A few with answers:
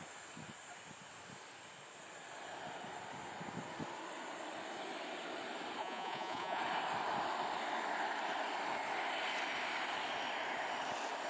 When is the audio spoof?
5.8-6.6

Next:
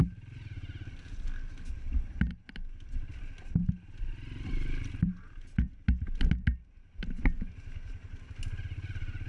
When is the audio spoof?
none